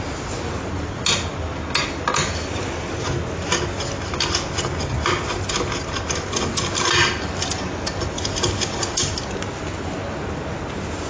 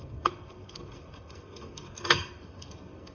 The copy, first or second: second